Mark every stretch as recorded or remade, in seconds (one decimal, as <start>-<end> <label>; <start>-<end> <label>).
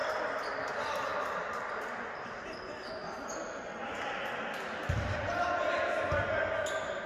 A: 0.0-7.1 recorded